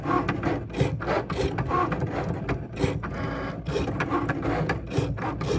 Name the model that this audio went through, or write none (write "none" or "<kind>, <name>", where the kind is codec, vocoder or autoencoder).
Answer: none